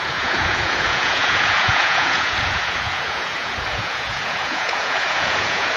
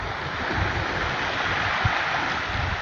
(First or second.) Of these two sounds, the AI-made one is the first